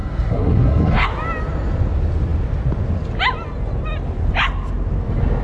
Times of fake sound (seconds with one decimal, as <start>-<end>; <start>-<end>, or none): 0.0-1.1